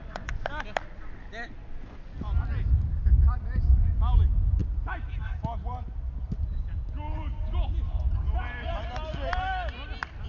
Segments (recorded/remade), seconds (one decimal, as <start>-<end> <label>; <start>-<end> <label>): 0.0-0.5 remade; 0.5-10.3 recorded